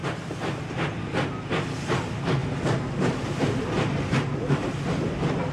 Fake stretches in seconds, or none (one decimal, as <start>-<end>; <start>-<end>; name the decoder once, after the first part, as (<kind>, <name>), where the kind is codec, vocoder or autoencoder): none